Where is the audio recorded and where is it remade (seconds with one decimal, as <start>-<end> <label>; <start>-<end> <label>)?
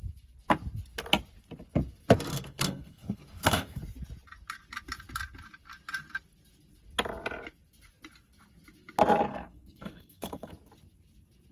0.0-2.3 recorded; 2.3-3.8 remade; 3.8-9.3 recorded; 9.3-10.5 remade; 10.5-11.5 recorded